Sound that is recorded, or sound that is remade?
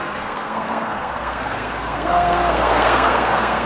remade